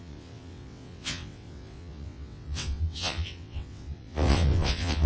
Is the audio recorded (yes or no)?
no